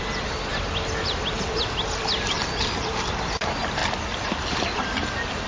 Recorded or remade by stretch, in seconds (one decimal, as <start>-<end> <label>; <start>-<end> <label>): 0.0-5.5 recorded